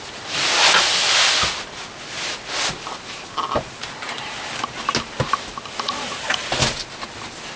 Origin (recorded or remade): recorded